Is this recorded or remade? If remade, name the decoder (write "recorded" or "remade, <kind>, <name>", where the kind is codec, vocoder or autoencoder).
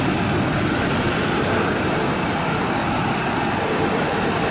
recorded